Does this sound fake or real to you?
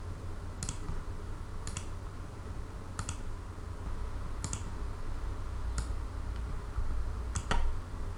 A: real